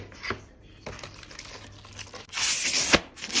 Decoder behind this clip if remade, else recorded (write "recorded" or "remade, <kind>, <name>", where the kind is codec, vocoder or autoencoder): recorded